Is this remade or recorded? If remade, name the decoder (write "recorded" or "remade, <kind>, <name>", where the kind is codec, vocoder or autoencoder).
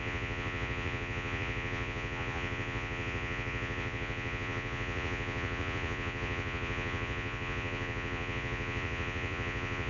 remade, vocoder, Vocos